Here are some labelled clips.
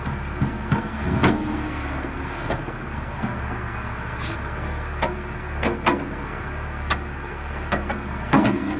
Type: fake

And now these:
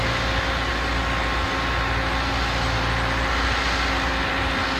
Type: real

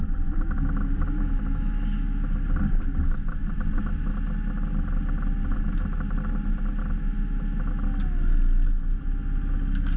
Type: real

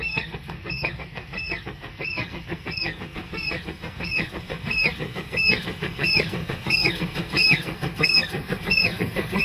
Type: fake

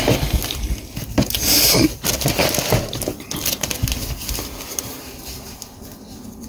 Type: real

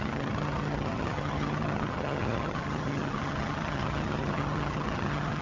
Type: fake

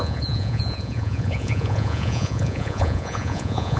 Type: fake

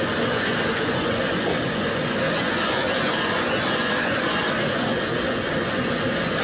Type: fake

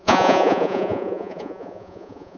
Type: fake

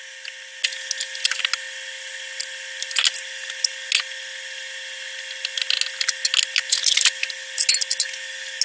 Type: real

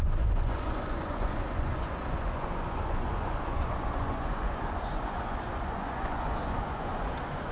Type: fake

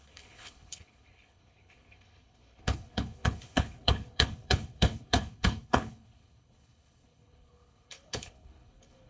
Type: fake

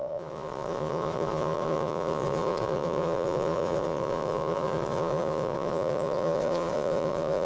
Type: fake